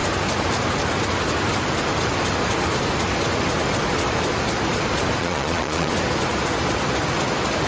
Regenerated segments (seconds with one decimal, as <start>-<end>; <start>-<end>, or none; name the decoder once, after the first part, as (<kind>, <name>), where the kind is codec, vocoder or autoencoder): 5.2-5.9 (vocoder, Vocos)